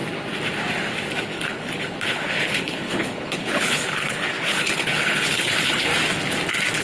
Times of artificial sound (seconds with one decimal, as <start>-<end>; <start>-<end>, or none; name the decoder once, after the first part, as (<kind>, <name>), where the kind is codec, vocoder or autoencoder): 1.2-5.9 (codec, HILCodec)